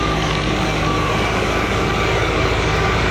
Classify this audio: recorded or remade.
remade